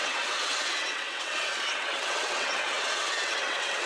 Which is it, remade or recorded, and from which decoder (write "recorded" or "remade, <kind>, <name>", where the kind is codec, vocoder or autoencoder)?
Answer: remade, vocoder, WaveNeXt